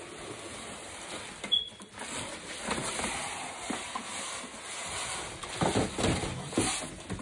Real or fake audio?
real